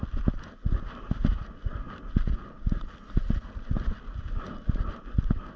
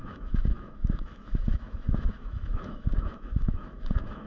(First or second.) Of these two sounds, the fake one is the second